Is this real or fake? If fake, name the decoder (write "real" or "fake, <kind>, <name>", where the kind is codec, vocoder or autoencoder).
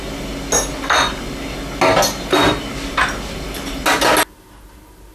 real